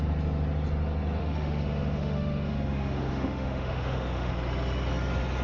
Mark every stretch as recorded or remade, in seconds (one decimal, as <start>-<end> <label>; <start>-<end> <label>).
0.0-1.2 recorded; 1.2-4.3 remade; 4.3-5.4 recorded